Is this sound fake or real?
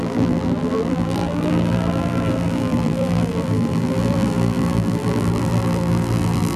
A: fake